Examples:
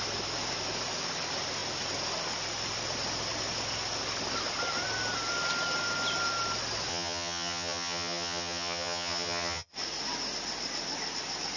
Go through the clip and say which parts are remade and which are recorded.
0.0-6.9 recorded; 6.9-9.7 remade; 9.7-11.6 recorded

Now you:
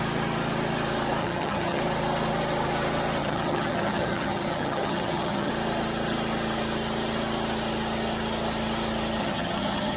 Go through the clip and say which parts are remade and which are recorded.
0.0-1.2 recorded; 1.2-1.8 remade; 1.8-3.2 recorded; 3.2-5.5 remade; 5.5-9.2 recorded; 9.2-10.0 remade

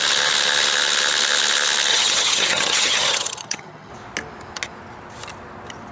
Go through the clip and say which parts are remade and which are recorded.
0.0-1.9 recorded; 1.9-3.9 remade; 3.9-5.9 recorded

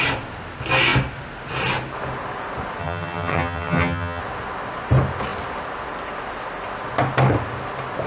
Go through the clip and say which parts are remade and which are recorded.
0.0-2.8 recorded; 2.8-4.2 remade; 4.2-8.1 recorded